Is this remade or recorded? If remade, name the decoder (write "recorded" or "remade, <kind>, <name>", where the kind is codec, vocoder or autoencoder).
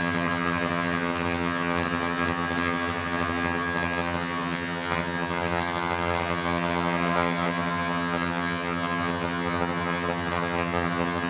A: remade, vocoder, HiFi-GAN